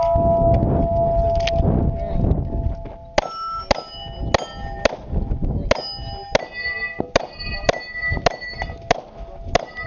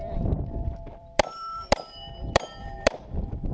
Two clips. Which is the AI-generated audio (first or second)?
second